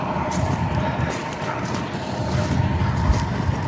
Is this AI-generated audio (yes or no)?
no